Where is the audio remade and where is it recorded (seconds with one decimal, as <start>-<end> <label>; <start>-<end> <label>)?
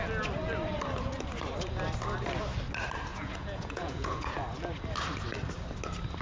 0.0-3.1 recorded; 3.1-4.3 remade; 4.3-6.2 recorded